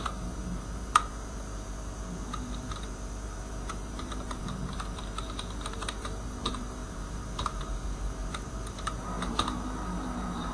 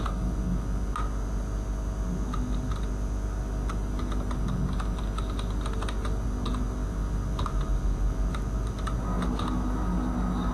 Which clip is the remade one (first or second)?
first